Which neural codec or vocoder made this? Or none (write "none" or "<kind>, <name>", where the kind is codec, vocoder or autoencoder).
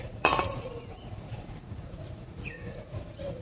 vocoder, Vocos